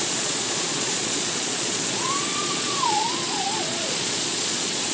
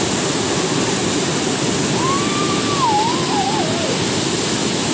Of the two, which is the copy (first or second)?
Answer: first